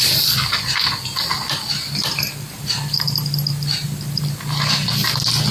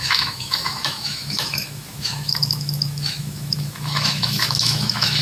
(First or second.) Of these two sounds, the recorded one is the first